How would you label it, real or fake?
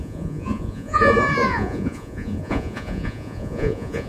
fake